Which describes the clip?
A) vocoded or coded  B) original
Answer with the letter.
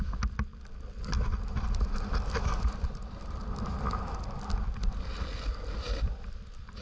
B